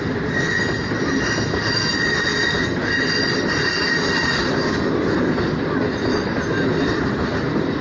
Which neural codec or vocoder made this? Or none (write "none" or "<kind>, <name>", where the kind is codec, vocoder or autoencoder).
none